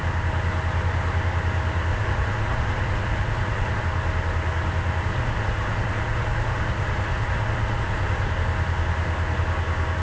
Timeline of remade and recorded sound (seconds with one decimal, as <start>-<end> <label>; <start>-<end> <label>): 0.0-1.9 recorded; 1.9-3.8 remade; 3.8-5.1 recorded; 5.1-8.3 remade; 8.3-10.0 recorded

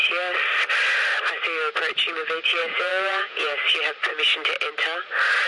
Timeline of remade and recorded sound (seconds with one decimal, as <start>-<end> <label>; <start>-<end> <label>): 0.0-2.6 recorded; 2.6-3.6 remade; 3.6-5.5 recorded

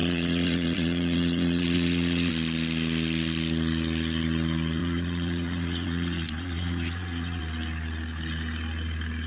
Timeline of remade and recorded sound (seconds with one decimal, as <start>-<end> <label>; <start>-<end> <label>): 0.0-2.3 remade; 2.3-4.8 recorded; 4.8-7.4 remade; 7.4-9.3 recorded

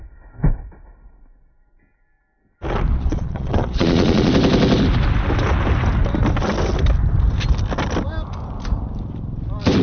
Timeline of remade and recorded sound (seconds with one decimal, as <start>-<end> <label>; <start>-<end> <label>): 0.0-2.9 recorded; 2.9-4.3 remade; 4.3-9.8 recorded

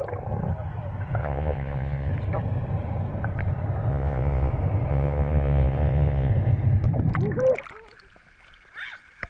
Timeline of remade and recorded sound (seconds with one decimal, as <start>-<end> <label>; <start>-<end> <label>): 0.0-1.2 recorded; 1.2-2.1 remade; 2.1-3.9 recorded; 3.9-4.5 remade; 4.5-4.9 recorded; 4.9-6.3 remade; 6.3-9.3 recorded

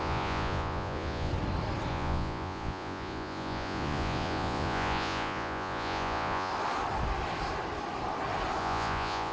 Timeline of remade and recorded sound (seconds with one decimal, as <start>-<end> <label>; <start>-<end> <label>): 0.0-1.3 remade; 1.3-1.9 recorded; 1.9-6.5 remade; 6.5-8.6 recorded; 8.6-9.3 remade

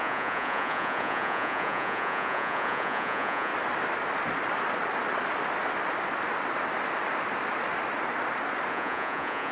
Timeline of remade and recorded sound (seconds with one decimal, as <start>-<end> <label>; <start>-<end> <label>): 0.0-3.5 remade; 3.5-8.7 recorded; 8.7-9.5 remade

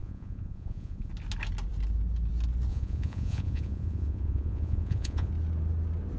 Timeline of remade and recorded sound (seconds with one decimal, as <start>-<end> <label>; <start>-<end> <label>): 0.0-1.1 remade; 1.1-2.7 recorded; 2.7-5.3 remade; 5.3-6.2 recorded